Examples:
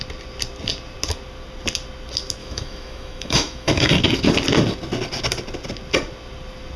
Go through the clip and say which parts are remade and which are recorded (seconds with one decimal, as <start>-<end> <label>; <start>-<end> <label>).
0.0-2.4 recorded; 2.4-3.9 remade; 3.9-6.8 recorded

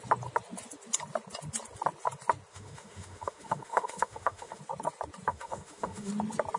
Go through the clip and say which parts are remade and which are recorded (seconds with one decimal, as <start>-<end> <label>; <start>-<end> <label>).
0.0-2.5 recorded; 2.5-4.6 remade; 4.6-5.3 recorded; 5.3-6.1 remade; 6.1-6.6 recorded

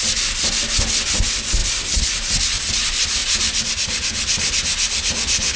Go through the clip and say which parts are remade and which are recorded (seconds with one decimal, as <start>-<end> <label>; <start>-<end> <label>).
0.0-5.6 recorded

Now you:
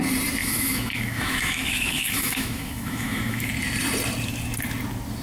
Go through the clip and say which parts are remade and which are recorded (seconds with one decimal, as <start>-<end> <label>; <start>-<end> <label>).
0.0-0.4 recorded; 0.4-3.5 remade; 3.5-5.2 recorded

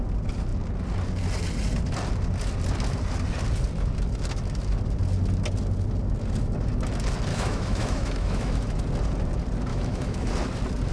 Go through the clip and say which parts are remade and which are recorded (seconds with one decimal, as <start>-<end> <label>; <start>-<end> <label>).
0.0-7.3 recorded; 7.3-8.8 remade; 8.8-9.7 recorded; 9.7-10.3 remade; 10.3-10.9 recorded